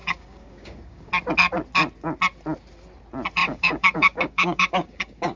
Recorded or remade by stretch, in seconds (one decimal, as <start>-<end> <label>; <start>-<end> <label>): 0.0-1.1 remade; 1.1-3.4 recorded; 3.4-5.4 remade